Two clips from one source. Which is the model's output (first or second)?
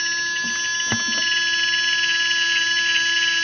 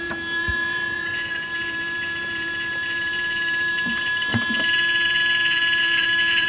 second